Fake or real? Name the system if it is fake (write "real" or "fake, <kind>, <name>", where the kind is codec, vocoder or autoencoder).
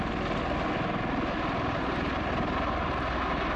real